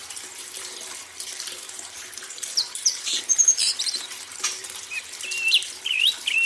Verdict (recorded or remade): remade